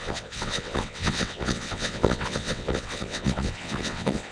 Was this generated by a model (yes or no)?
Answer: yes